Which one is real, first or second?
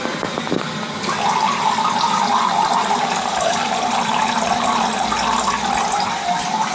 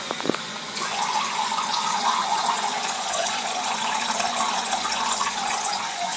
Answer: first